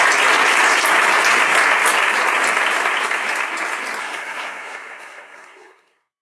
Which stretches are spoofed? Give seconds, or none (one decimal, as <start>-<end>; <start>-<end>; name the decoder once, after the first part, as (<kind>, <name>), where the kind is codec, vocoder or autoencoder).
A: 4.0-6.2 (codec, SNAC)